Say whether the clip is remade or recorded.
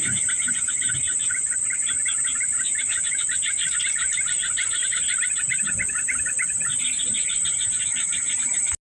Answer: recorded